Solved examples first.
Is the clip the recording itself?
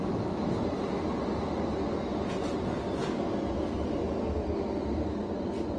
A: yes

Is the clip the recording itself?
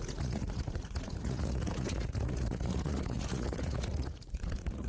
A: no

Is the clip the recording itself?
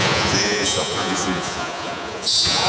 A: no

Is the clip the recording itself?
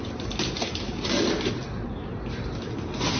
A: yes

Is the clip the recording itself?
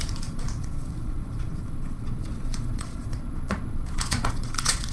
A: no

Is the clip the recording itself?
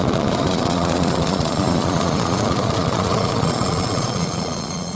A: no